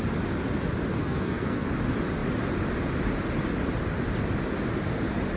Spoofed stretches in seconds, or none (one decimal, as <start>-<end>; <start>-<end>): 1.0-1.7